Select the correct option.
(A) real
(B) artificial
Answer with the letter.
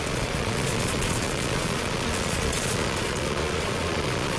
B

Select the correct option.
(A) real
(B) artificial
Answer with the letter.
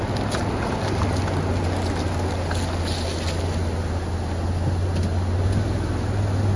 A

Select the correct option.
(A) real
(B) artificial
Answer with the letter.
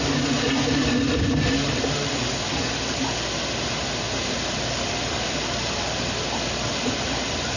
A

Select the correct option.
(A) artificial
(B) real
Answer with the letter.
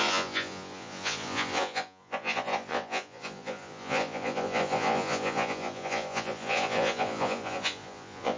A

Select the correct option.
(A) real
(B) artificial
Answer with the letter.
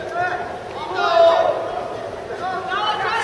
A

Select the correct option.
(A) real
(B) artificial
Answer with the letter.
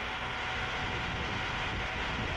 A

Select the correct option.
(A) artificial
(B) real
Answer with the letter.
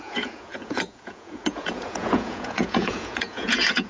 A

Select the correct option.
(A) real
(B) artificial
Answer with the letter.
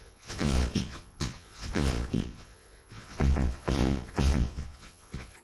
B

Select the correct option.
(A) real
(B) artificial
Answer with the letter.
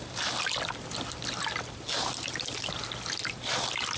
A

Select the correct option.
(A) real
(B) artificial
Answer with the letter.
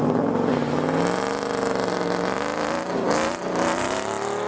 A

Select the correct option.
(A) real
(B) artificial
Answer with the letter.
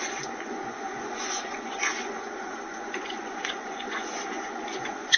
B